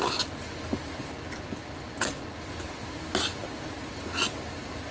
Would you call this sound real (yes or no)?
yes